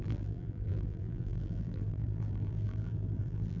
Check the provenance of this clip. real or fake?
fake